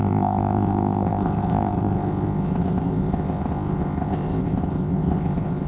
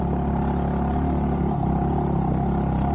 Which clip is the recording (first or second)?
second